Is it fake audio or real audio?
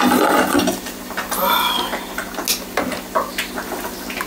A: real